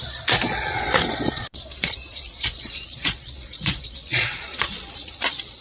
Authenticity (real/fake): fake